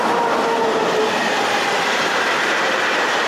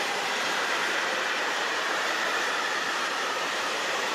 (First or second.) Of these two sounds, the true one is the first